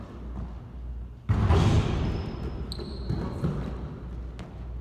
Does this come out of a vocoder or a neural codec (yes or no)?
no